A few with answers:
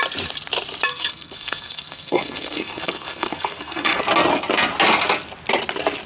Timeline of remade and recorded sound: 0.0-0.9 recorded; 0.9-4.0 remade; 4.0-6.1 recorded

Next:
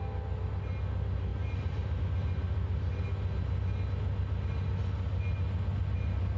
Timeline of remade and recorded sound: 0.0-1.3 recorded; 1.3-2.0 remade; 2.0-6.4 recorded

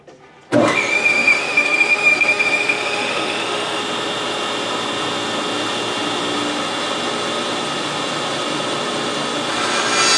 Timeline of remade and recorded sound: 0.0-0.9 recorded; 0.9-3.8 remade; 3.8-10.2 recorded

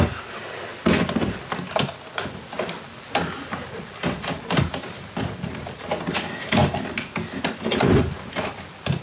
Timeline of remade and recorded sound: 0.0-9.0 recorded

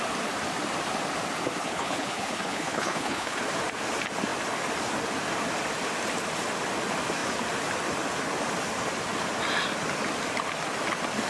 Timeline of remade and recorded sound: 0.0-1.6 recorded; 1.6-3.4 remade; 3.4-11.3 recorded

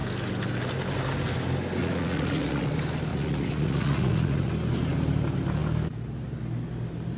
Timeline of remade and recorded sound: 0.0-1.8 recorded; 1.8-2.7 remade; 2.7-3.1 recorded; 3.1-4.5 remade; 4.5-7.2 recorded